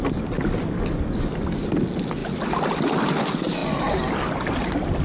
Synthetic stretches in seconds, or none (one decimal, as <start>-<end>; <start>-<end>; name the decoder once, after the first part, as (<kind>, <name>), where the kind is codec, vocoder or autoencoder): none

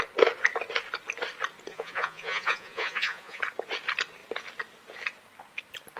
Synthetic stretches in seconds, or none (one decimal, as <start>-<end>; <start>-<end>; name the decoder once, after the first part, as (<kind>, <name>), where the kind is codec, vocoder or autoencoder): 1.7-3.4 (vocoder, Vocos)

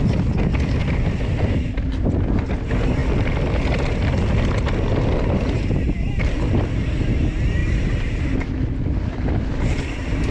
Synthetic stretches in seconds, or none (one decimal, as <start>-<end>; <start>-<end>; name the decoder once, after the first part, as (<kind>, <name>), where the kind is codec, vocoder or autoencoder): 7.6-8.2 (vocoder, BigVGAN v2)

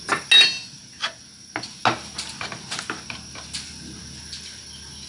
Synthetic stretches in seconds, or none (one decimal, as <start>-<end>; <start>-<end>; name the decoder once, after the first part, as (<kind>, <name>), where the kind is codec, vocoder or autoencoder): none